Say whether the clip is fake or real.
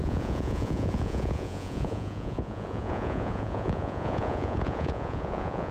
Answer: fake